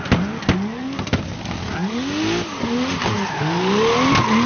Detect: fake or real real